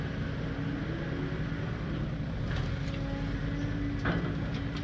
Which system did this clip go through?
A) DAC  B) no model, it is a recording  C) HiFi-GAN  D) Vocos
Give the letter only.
B